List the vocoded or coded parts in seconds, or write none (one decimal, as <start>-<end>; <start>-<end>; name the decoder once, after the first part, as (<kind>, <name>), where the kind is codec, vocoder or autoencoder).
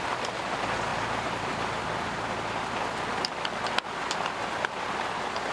none